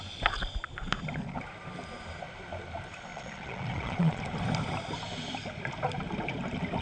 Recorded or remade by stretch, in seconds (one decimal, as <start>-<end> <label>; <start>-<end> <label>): 0.0-3.1 recorded; 3.1-4.2 remade; 4.2-6.8 recorded